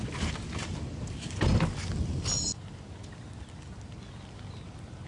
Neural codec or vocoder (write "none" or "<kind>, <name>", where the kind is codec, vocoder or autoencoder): none